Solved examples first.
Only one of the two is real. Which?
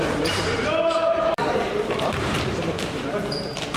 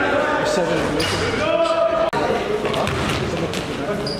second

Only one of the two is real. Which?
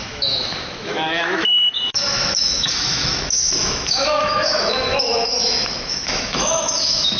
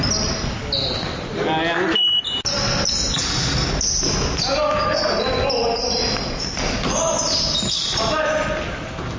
second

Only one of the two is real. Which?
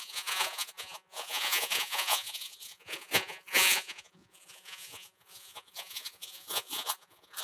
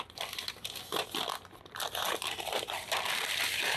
second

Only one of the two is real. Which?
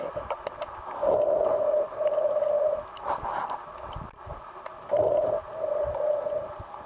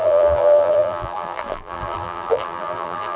first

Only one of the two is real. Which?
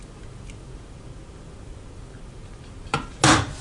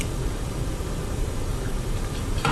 first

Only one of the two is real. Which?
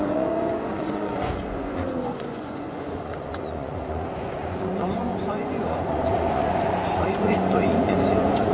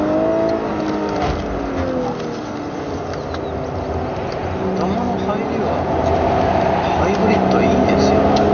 second